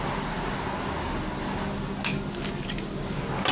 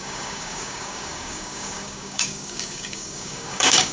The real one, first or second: first